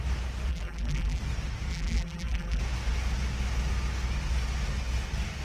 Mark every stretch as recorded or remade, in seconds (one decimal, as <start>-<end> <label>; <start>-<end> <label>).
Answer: 0.0-0.5 recorded; 0.5-1.2 remade; 1.2-1.7 recorded; 1.7-2.6 remade; 2.6-5.4 recorded